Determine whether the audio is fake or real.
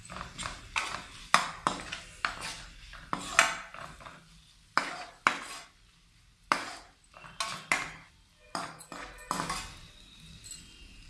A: real